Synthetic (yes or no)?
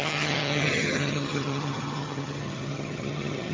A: yes